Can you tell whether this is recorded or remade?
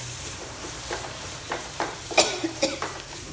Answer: remade